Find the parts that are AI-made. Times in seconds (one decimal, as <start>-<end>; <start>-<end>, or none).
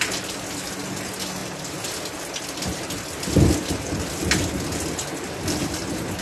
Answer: none